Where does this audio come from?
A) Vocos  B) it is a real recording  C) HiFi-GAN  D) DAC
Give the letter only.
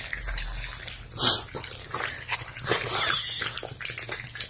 B